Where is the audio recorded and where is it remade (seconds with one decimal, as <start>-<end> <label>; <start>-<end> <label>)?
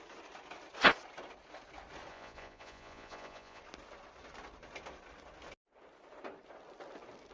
0.0-2.1 recorded; 2.1-3.6 remade; 3.6-7.3 recorded